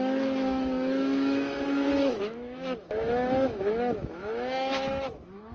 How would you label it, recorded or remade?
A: remade